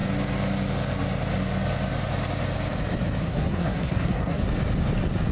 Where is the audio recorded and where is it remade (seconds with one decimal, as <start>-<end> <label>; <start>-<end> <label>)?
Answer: 0.0-3.2 recorded; 3.2-4.4 remade; 4.4-5.3 recorded

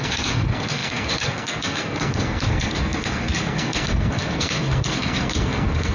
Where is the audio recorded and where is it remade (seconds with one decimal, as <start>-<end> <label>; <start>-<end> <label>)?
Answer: 0.0-5.9 remade

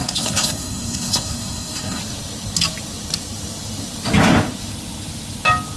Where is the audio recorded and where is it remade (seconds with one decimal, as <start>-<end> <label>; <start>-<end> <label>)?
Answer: 0.0-2.0 remade; 2.0-5.8 recorded

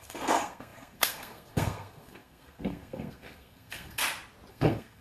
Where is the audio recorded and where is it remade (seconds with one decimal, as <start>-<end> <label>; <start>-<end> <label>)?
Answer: 0.0-4.0 remade; 4.0-4.5 recorded; 4.5-5.0 remade

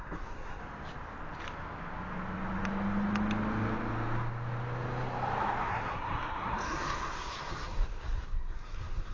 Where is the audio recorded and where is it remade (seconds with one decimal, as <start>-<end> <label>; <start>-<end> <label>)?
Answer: 0.0-0.6 remade; 0.6-5.7 recorded; 5.7-9.1 remade

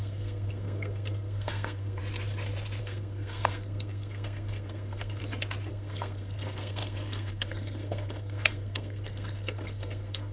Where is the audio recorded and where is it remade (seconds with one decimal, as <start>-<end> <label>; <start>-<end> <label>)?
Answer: 0.0-2.0 remade; 2.0-2.8 recorded; 2.8-5.2 remade; 5.2-5.7 recorded; 5.7-10.3 remade

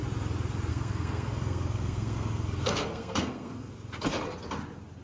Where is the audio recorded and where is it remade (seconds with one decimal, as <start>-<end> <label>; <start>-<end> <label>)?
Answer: 0.0-0.7 recorded; 0.7-3.7 remade; 3.7-5.0 recorded

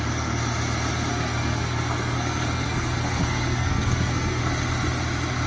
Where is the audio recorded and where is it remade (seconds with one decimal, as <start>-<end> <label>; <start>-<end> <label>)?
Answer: 0.0-1.1 recorded; 1.1-4.4 remade; 4.4-5.5 recorded